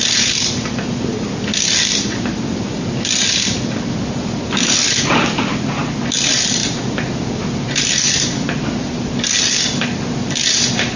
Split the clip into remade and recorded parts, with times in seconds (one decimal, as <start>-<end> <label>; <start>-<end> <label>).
0.0-11.0 recorded